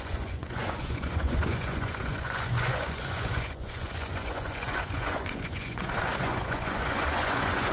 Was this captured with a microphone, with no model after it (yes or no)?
no